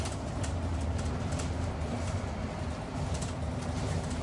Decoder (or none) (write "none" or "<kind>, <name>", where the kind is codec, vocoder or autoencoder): none